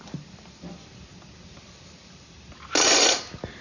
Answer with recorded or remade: recorded